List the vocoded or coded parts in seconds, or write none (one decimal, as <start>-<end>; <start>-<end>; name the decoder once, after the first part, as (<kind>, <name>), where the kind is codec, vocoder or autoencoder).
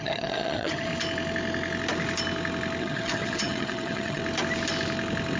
0.0-0.9 (vocoder, HiFi-GAN); 2.8-4.2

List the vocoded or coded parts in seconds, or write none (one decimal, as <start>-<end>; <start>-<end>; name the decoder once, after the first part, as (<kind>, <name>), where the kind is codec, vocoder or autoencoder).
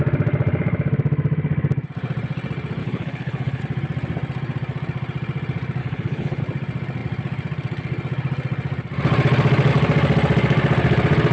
2.8-3.6 (codec, HILCodec); 5.8-6.4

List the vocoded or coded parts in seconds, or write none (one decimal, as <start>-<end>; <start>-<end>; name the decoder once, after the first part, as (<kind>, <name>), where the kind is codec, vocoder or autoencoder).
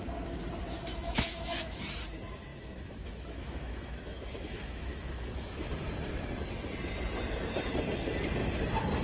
0.9-1.8 (autoencoder, DAC-VAE); 2.5-5.7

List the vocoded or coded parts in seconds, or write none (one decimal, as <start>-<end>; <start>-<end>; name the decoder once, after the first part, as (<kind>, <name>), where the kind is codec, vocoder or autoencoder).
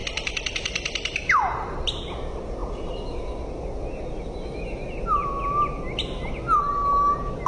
none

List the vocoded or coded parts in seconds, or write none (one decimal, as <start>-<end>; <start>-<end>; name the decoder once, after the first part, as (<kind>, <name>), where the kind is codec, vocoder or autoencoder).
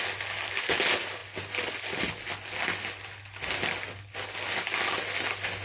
none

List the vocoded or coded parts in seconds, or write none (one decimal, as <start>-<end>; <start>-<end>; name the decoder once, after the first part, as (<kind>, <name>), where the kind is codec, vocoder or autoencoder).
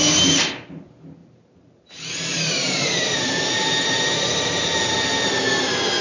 1.2-4.8 (vocoder, BigVGAN v2)